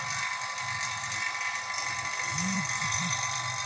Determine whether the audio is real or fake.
fake